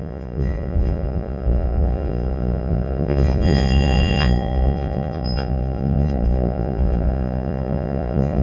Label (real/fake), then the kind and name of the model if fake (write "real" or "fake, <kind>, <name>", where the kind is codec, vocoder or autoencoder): fake, vocoder, Vocos